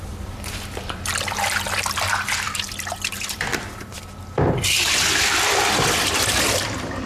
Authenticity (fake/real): fake